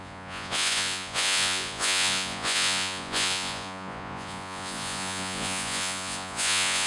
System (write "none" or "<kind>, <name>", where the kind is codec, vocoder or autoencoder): vocoder, Vocos